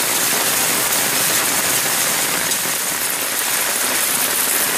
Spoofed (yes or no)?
no